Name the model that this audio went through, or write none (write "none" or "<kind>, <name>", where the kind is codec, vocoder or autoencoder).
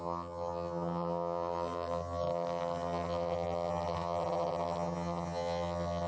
vocoder, HiFi-GAN